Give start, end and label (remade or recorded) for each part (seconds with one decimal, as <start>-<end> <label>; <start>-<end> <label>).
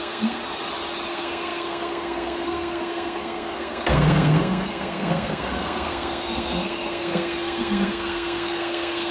0.0-0.4 remade; 0.4-1.1 recorded; 1.1-9.1 remade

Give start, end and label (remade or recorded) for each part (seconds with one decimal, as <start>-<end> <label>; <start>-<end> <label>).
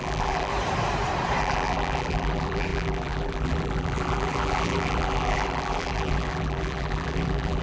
0.0-0.5 remade; 0.5-1.4 recorded; 1.4-7.6 remade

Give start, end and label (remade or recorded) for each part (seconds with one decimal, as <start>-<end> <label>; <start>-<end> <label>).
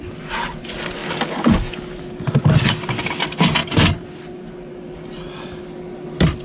0.0-6.4 recorded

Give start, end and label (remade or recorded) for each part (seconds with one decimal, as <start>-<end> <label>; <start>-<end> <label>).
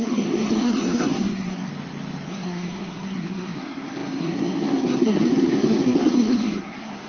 0.0-1.7 remade; 1.7-2.3 recorded; 2.3-7.1 remade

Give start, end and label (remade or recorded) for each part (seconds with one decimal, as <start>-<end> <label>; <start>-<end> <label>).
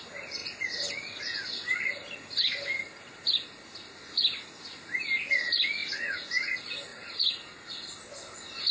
0.0-6.9 recorded; 6.9-7.7 remade; 7.7-8.7 recorded